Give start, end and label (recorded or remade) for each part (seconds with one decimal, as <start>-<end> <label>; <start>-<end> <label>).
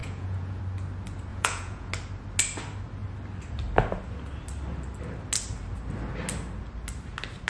0.0-0.6 remade; 0.6-1.3 recorded; 1.3-1.9 remade; 1.9-7.5 recorded